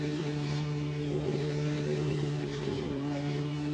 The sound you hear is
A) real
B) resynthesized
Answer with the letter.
B